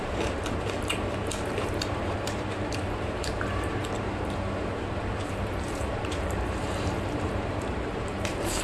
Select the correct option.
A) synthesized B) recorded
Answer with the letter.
A